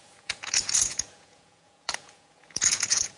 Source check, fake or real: fake